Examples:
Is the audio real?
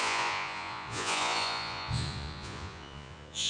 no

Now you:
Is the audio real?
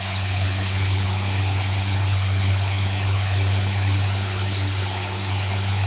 no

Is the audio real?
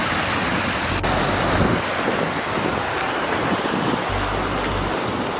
yes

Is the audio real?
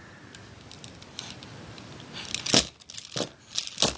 yes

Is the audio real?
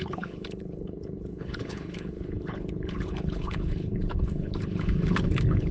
no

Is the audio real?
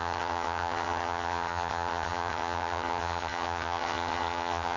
no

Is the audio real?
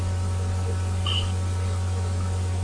yes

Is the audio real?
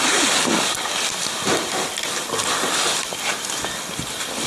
yes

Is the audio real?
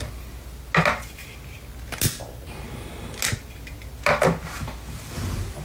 yes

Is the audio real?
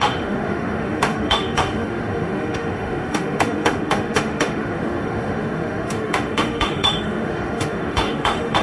no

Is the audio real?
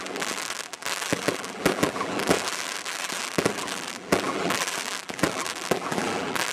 no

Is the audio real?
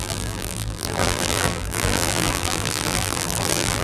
no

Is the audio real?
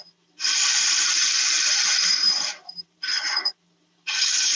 no